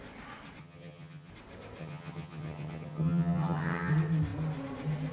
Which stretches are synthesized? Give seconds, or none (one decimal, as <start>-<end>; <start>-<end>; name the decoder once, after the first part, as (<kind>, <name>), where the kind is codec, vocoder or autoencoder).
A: 0.6-1.3 (vocoder, HiFi-GAN); 1.8-3.9